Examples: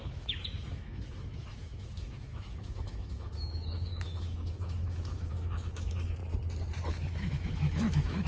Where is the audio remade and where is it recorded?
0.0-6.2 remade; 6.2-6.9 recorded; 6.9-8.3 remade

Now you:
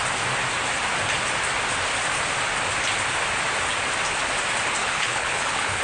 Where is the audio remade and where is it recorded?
0.0-4.8 recorded; 4.8-5.8 remade

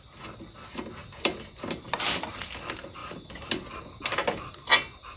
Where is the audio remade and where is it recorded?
0.0-5.2 recorded

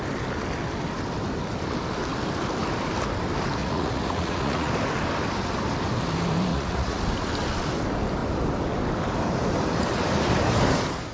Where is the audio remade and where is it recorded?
0.0-3.6 recorded; 3.6-4.7 remade; 4.7-6.5 recorded; 6.5-7.0 remade; 7.0-11.1 recorded

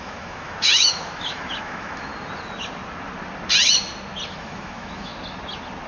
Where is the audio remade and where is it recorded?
0.0-2.1 remade; 2.1-4.3 recorded; 4.3-5.1 remade; 5.1-5.9 recorded

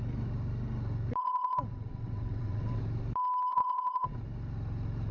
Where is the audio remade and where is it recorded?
0.0-1.2 recorded; 1.2-2.8 remade; 2.8-3.5 recorded; 3.5-4.2 remade; 4.2-5.1 recorded